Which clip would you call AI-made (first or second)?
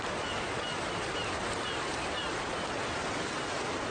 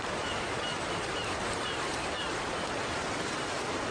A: second